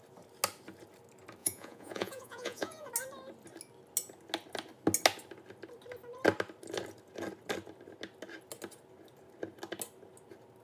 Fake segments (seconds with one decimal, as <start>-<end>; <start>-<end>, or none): 1.4-2.9